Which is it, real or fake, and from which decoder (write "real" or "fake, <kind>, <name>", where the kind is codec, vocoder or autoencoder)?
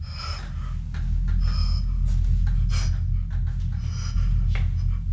real